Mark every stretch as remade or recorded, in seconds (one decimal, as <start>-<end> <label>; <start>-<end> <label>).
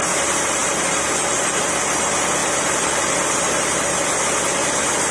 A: 0.0-2.4 recorded; 2.4-3.9 remade; 3.9-5.1 recorded